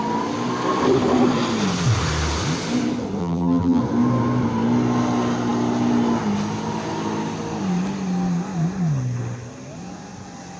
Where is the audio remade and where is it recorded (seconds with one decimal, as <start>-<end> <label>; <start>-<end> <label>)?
0.0-3.2 recorded; 3.2-3.8 remade; 3.8-10.6 recorded